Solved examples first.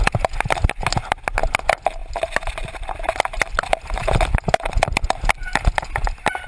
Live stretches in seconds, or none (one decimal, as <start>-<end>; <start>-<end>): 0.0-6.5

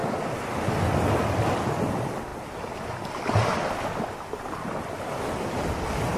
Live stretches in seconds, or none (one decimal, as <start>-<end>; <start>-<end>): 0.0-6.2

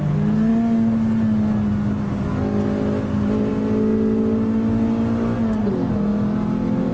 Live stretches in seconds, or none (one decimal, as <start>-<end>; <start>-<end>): 0.0-6.9